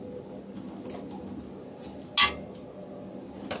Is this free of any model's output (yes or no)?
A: yes